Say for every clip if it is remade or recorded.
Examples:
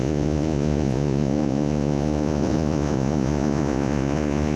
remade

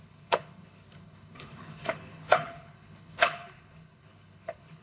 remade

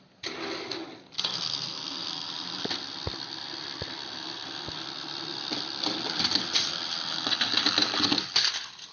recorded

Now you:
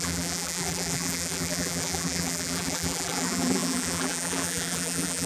remade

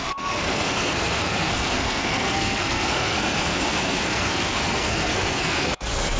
remade